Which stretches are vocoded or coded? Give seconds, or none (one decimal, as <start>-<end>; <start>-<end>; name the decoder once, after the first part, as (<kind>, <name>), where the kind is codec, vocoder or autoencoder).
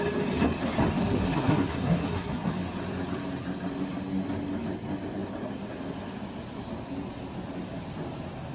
1.0-2.5 (codec, SNAC)